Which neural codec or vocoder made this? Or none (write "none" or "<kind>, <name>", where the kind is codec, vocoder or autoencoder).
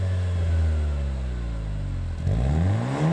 none